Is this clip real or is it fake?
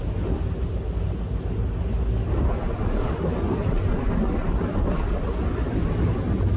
real